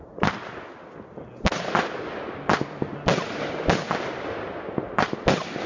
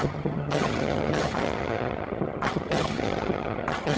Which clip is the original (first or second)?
first